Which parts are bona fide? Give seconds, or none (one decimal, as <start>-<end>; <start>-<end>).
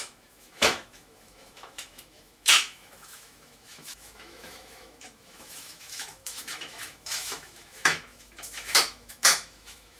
none